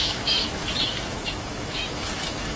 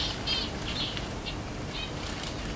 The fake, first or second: first